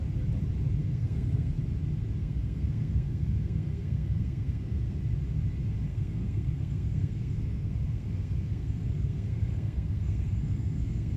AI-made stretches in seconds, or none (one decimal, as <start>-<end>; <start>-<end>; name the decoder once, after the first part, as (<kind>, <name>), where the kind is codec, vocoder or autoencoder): 0.8-1.6 (codec, SNAC); 2.2-5.0; 5.9-11.2